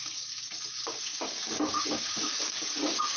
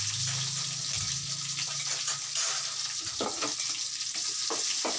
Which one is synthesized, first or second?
first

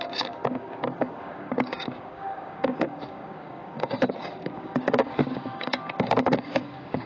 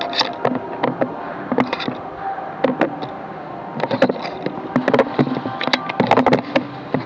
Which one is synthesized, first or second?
first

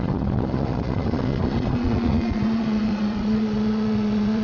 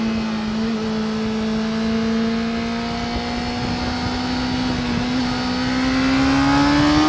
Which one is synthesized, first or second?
first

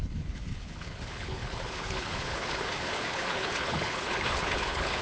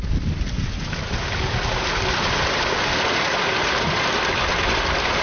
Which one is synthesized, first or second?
first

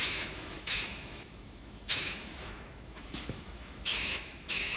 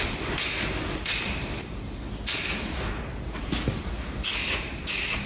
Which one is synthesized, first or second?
first